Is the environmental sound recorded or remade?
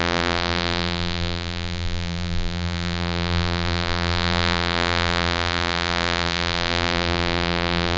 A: remade